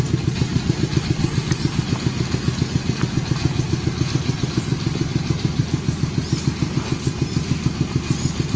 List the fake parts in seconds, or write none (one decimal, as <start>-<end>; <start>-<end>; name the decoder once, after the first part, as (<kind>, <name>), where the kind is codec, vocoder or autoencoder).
none